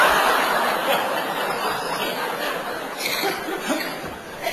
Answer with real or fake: real